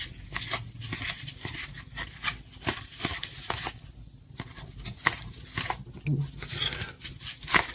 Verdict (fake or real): real